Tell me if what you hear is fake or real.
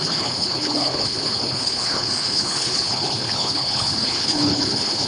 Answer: fake